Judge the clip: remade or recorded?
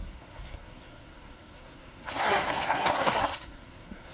remade